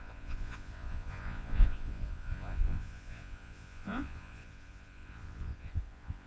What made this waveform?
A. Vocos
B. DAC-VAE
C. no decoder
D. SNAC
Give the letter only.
A